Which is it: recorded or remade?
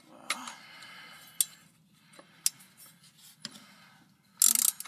recorded